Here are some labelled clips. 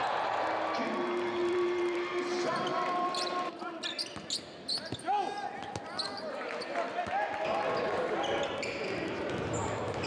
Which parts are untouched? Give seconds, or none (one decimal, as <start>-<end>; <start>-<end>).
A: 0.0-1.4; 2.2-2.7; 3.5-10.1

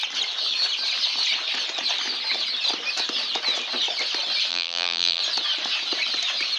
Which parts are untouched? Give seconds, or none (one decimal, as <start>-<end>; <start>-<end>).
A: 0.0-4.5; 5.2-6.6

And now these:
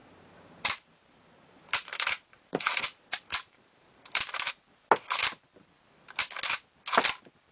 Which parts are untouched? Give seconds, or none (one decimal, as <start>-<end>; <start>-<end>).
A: 4.5-7.5

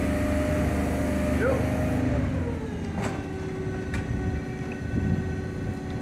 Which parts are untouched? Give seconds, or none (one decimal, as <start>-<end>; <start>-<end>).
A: 0.0-6.0

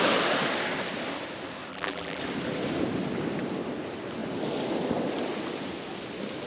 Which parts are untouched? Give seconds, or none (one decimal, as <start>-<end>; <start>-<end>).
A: 0.0-1.7; 2.2-6.5

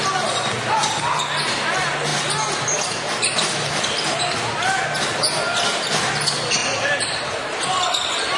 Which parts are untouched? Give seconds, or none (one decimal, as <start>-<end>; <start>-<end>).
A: 0.0-6.6